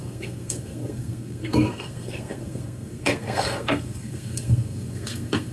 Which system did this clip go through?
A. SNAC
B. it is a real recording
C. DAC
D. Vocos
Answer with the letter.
A